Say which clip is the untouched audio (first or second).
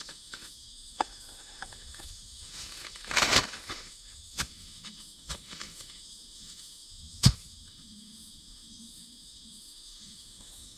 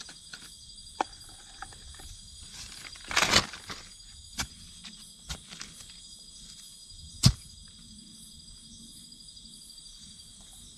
second